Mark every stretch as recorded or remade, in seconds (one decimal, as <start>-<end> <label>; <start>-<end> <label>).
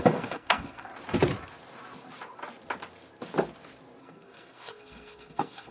0.0-0.9 remade; 0.9-4.0 recorded; 4.0-5.7 remade